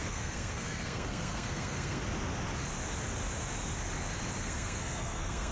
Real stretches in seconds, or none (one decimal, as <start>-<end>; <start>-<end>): 2.0-4.4